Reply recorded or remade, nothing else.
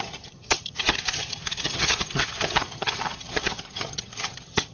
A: remade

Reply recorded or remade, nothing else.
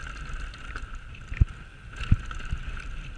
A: recorded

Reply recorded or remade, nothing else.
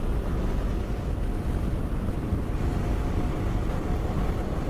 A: recorded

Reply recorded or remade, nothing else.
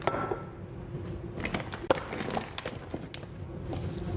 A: recorded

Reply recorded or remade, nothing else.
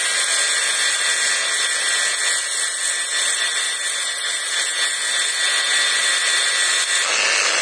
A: recorded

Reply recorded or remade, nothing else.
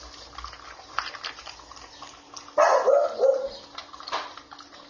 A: recorded